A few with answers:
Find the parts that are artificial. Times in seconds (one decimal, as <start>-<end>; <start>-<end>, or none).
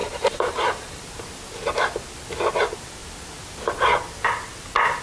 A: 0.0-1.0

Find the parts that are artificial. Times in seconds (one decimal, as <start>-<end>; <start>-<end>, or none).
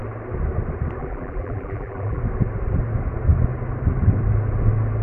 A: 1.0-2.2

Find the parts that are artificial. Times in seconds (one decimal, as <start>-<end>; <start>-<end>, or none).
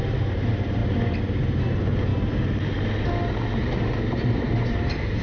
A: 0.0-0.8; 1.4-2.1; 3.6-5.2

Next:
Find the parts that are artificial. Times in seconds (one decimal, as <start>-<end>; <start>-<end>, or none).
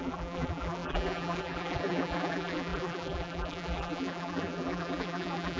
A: 0.0-5.6